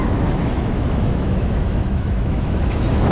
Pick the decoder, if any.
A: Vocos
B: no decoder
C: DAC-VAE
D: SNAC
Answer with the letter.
C